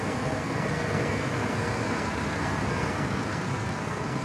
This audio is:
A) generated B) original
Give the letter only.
A